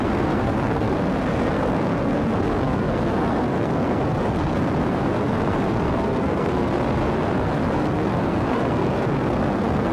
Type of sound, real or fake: fake